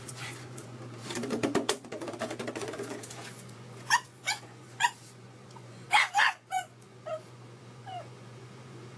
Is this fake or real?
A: fake